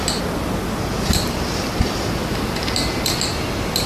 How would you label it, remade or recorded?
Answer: recorded